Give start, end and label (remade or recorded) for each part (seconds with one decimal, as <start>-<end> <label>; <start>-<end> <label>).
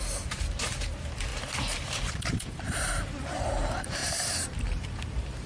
0.0-5.5 remade